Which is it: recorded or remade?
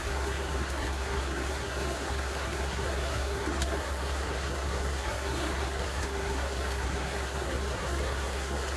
remade